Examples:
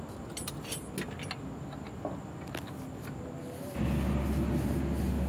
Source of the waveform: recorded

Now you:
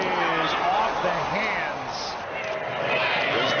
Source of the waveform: recorded